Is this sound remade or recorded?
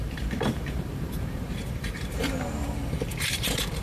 remade